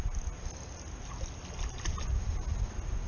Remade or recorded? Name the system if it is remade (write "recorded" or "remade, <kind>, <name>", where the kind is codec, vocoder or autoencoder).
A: recorded